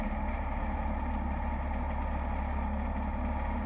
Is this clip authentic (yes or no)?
yes